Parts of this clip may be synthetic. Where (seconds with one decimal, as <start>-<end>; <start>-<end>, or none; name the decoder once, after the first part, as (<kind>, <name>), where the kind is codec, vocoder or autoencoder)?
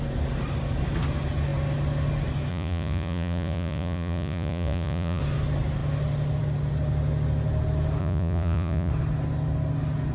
2.5-5.2 (vocoder, Vocos); 8.0-8.9